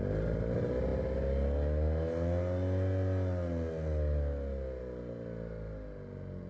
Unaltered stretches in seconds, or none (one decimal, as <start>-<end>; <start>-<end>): 0.0-6.5